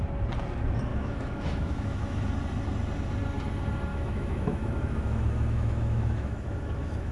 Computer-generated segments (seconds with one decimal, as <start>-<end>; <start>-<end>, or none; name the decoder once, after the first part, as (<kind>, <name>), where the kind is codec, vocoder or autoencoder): 0.9-2.3 (autoencoder, DAC-VAE); 3.9-7.1